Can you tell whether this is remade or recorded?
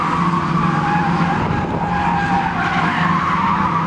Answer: recorded